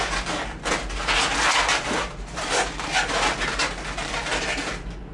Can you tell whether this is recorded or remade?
recorded